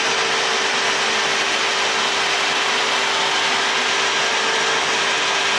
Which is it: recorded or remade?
recorded